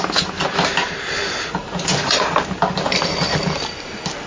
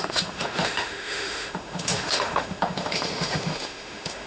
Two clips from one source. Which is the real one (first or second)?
first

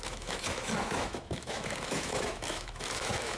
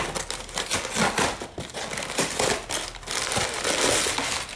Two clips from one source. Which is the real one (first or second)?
second